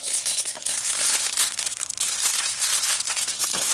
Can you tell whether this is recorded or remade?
remade